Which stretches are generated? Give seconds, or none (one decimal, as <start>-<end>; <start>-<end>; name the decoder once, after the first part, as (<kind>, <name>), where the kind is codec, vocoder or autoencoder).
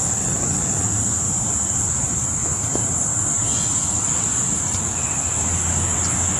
none